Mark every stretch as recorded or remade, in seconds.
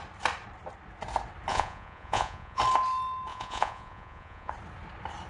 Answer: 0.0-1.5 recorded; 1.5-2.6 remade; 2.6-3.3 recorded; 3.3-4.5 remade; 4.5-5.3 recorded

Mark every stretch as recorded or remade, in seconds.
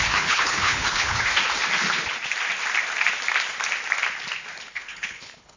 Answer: 0.0-1.3 remade; 1.3-4.7 recorded; 4.7-5.6 remade